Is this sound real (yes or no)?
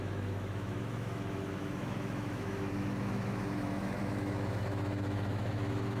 no